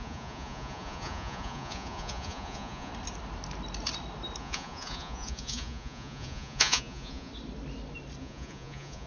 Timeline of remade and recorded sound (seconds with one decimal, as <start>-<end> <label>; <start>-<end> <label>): 0.0-2.9 remade; 2.9-4.4 recorded; 4.4-7.3 remade; 7.3-8.2 recorded; 8.2-9.1 remade